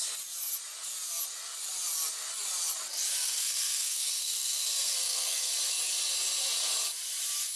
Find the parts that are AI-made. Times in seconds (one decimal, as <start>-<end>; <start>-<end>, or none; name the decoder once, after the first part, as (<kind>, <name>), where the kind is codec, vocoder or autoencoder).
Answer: 3.2-5.5 (codec, SNAC)